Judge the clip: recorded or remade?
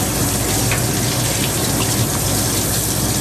recorded